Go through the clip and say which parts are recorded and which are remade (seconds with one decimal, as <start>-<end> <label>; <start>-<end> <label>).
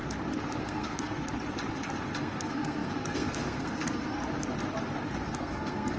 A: 0.0-0.6 recorded; 0.6-1.2 remade; 1.2-2.2 recorded; 2.2-4.2 remade; 4.2-5.4 recorded; 5.4-6.0 remade